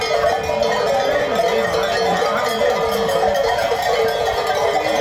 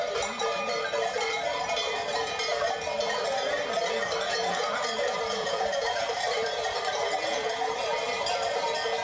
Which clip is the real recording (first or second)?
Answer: first